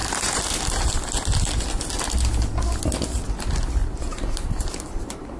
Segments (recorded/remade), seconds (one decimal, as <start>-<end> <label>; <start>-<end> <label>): 0.0-0.6 remade; 0.6-3.8 recorded; 3.8-5.4 remade